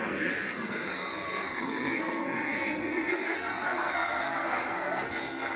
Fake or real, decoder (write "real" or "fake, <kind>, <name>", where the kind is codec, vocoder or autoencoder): fake, codec, SNAC